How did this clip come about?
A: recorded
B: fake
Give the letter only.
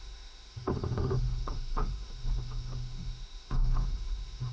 B